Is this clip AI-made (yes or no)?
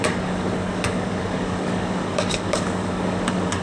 yes